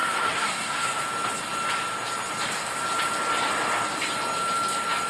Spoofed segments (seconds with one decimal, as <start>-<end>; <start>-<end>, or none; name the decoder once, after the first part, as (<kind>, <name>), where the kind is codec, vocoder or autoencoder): 0.0-1.0 (codec, SNAC)